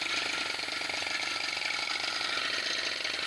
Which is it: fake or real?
real